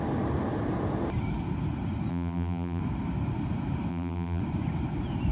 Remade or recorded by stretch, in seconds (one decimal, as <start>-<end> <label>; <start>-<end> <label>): 0.0-2.1 recorded; 2.1-2.8 remade; 2.8-3.9 recorded; 3.9-4.4 remade; 4.4-5.3 recorded